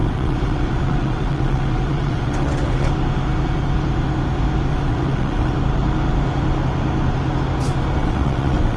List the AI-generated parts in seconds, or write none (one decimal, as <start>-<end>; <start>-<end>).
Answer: 0.0-2.9; 4.7-5.5; 8.0-8.8